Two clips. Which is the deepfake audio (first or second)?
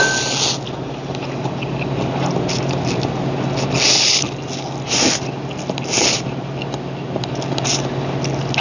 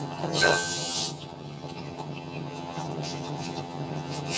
second